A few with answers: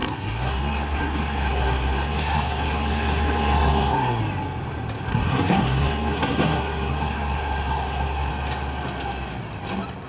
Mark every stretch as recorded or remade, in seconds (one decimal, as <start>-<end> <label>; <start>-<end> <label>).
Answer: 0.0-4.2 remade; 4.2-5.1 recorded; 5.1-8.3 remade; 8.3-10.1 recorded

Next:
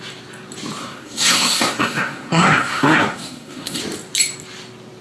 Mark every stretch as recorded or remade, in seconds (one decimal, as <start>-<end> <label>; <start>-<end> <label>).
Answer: 0.0-0.8 recorded; 0.8-3.8 remade; 3.8-5.0 recorded

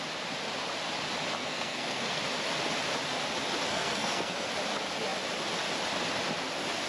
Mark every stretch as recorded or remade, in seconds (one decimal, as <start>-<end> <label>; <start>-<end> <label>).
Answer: 0.0-1.4 recorded; 1.4-2.2 remade; 2.2-3.7 recorded; 3.7-4.5 remade; 4.5-6.9 recorded

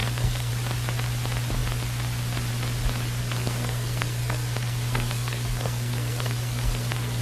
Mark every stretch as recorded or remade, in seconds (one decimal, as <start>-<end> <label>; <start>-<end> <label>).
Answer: 0.0-0.5 remade; 0.5-3.2 recorded; 3.2-7.2 remade

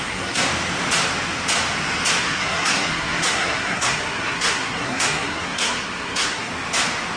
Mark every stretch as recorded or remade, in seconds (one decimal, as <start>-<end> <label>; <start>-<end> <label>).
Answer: 0.0-0.5 remade; 0.5-2.2 recorded; 2.2-6.5 remade; 6.5-7.2 recorded